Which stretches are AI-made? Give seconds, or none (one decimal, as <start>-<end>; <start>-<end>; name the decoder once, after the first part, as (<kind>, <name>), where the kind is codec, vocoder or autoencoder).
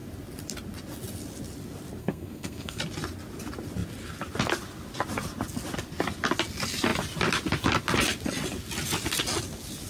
2.0-2.8 (codec, SNAC)